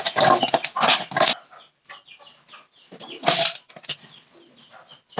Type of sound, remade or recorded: recorded